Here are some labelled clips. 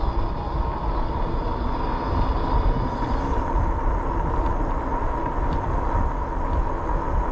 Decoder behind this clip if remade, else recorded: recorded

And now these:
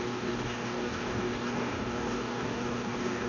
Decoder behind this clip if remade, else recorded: remade, codec, DAC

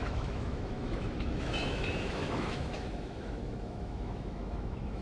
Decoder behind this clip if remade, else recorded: remade, autoencoder, DAC-VAE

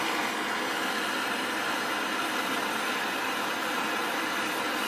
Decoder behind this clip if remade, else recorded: recorded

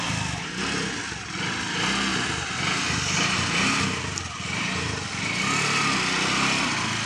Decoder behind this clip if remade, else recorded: recorded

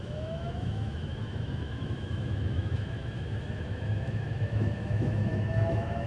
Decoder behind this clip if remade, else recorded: remade, autoencoder, DAC-VAE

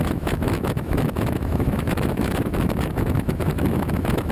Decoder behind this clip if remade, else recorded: remade, autoencoder, DAC-VAE